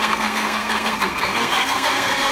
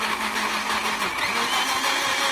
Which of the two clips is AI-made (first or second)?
first